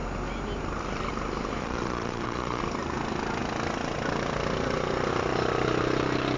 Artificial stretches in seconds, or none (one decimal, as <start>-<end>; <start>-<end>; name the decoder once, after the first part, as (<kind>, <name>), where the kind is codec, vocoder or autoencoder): 1.6-2.6 (vocoder, Vocos)